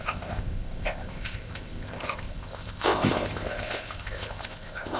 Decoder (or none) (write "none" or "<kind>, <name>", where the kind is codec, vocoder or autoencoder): codec, ZipCodec